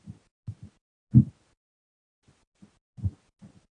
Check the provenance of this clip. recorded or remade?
recorded